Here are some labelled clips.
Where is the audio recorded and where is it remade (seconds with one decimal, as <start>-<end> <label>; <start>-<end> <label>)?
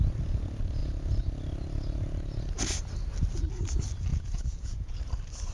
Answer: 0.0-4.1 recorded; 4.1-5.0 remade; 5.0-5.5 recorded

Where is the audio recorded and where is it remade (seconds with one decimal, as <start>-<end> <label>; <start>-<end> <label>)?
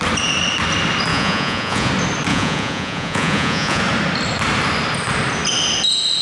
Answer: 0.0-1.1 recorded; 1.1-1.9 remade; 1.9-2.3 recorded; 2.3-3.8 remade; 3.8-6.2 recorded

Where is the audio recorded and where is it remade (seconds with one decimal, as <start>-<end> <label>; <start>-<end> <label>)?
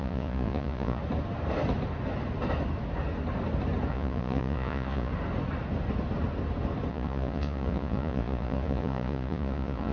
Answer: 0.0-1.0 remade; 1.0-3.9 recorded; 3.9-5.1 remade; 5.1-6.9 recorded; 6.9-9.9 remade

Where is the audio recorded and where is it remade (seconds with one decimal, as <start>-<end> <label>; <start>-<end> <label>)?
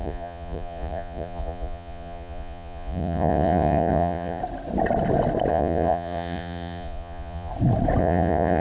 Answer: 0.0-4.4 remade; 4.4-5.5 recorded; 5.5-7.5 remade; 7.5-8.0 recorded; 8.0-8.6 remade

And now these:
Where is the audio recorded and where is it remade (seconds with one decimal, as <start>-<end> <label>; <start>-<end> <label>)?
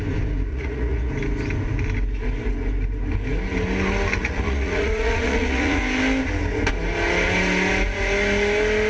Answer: 0.0-0.5 recorded; 0.5-1.1 remade; 1.1-4.2 recorded; 4.2-5.8 remade; 5.8-8.9 recorded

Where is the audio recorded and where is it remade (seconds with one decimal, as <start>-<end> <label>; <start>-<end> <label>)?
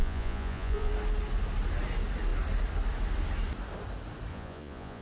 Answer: 0.0-0.9 remade; 0.9-4.3 recorded; 4.3-5.0 remade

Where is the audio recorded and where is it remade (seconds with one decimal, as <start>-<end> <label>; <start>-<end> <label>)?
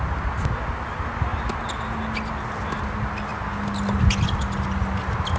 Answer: 0.0-5.4 recorded